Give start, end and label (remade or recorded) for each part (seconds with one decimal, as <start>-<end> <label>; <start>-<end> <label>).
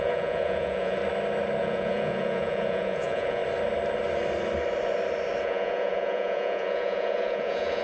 0.0-1.0 remade; 1.0-1.6 recorded; 1.6-3.4 remade; 3.4-5.4 recorded; 5.4-7.8 remade